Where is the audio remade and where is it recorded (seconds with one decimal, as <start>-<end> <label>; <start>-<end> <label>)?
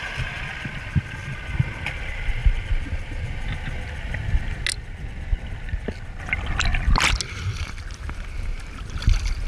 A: 0.0-2.4 recorded; 2.4-3.5 remade; 3.5-9.5 recorded